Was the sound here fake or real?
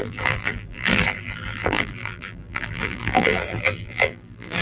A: fake